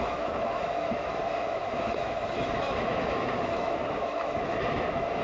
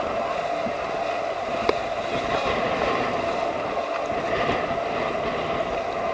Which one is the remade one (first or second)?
first